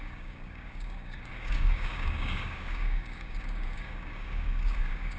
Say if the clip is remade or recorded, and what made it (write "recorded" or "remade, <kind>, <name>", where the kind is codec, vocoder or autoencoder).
remade, codec, DAC